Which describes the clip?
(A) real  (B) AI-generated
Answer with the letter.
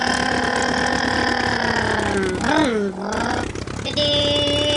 A